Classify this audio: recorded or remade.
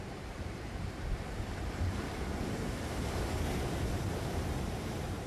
remade